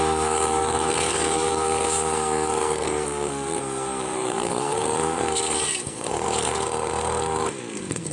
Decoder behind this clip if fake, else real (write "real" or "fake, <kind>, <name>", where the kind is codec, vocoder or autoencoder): fake, codec, SNAC